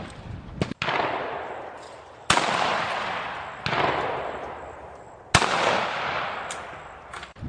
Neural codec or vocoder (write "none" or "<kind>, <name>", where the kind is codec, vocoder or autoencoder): none